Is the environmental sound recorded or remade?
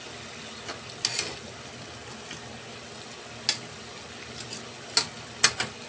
recorded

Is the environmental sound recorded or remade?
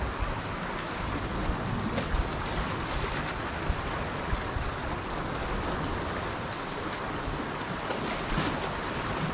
recorded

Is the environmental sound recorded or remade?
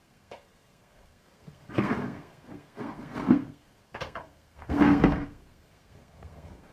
remade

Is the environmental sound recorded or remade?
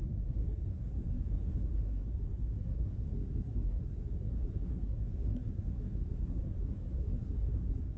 remade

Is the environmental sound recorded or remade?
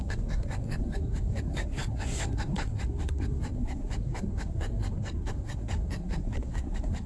remade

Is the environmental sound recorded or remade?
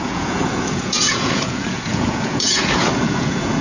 remade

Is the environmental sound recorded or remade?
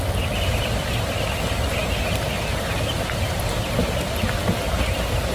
recorded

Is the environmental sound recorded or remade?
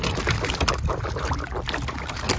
recorded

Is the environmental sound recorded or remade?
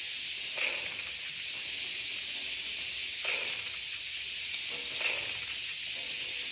recorded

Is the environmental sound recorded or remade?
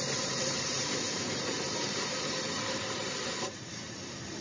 remade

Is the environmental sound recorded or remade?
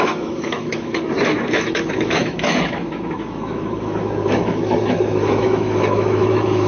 remade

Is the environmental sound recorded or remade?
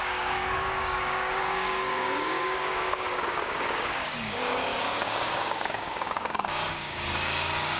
remade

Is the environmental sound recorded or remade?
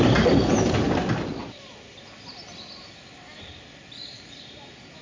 recorded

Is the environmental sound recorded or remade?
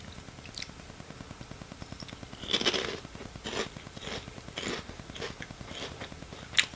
recorded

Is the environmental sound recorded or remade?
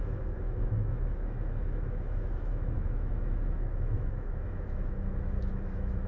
remade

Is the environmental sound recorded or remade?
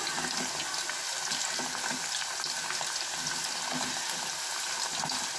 recorded